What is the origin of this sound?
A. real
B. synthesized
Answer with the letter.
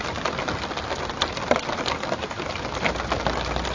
A